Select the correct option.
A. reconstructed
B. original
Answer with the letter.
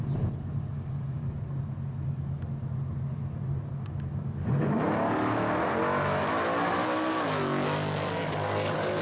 B